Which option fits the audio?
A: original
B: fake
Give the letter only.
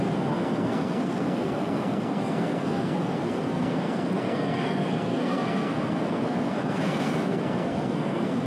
B